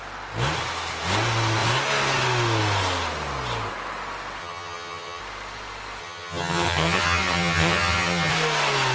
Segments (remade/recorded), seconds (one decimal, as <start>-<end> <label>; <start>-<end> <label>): 0.0-4.4 recorded; 4.4-5.2 remade; 5.2-6.0 recorded; 6.0-8.3 remade; 8.3-8.9 recorded